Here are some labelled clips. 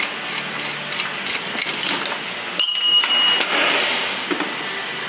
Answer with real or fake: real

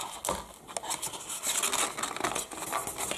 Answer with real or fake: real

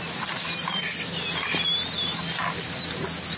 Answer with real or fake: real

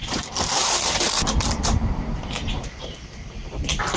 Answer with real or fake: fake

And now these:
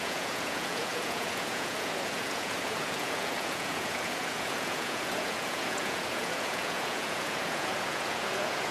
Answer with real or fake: fake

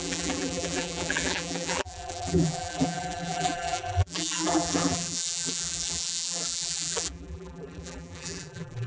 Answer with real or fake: fake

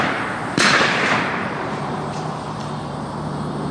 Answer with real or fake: fake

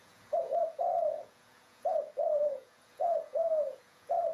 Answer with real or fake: fake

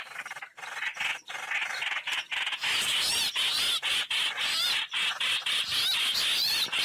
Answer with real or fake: real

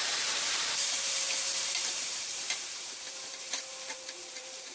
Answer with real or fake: fake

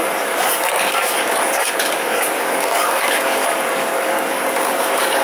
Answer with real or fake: fake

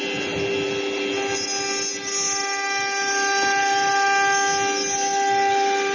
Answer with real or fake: real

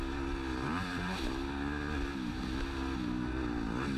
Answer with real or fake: real